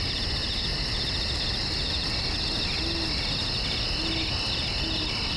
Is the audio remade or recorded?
recorded